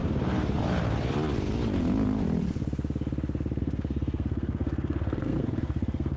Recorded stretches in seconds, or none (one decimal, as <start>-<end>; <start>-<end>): 0.0-3.6